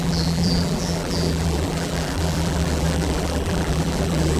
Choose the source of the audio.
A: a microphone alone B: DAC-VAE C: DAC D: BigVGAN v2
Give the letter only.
D